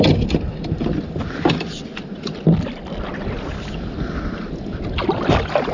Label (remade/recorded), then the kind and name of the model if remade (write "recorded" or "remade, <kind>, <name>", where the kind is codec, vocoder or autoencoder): recorded